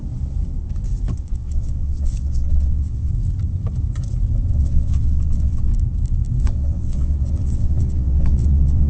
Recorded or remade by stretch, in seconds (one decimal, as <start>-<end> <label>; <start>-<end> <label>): 0.0-1.2 recorded; 1.2-3.1 remade; 3.1-4.5 recorded; 4.5-5.7 remade; 5.7-6.4 recorded; 6.4-8.9 remade